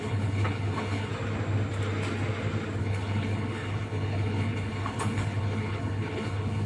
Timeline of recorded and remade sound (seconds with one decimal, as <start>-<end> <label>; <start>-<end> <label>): 0.0-1.1 remade; 1.1-2.8 recorded; 2.8-6.7 remade